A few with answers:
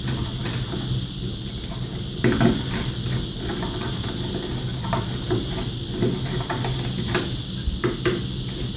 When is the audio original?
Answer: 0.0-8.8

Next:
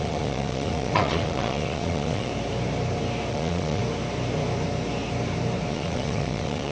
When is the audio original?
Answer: 2.3-3.3; 3.8-5.7

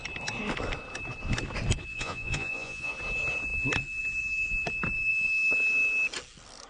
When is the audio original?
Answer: 0.0-1.9; 2.9-6.7

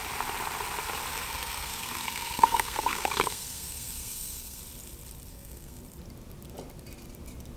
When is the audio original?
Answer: 0.0-1.1; 4.6-5.3; 5.8-7.6

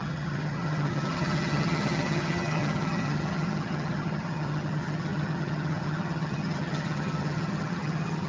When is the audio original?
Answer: none